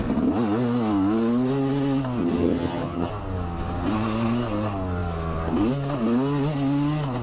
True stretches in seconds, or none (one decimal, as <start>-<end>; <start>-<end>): 0.0-2.2; 3.1-7.2